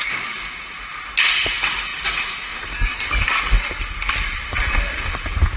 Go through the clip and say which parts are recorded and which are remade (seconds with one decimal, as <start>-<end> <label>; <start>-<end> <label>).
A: 0.0-5.6 recorded